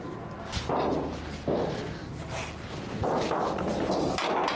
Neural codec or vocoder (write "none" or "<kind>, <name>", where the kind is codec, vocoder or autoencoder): none